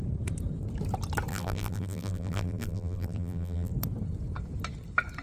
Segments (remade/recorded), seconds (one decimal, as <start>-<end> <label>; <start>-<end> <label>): 0.0-1.3 recorded; 1.3-3.7 remade; 3.7-5.2 recorded